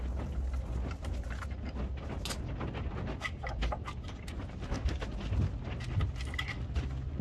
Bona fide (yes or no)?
yes